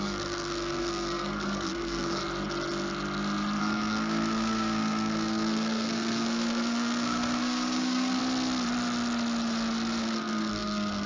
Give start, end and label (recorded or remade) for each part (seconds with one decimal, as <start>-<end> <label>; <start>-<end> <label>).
0.0-2.2 remade; 2.2-3.6 recorded; 3.6-8.2 remade; 8.2-10.0 recorded; 10.0-11.1 remade